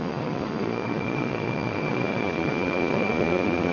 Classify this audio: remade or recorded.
remade